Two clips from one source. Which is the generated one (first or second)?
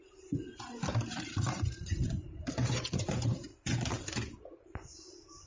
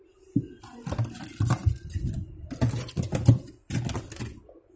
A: first